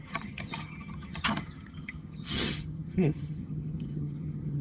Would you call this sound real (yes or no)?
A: no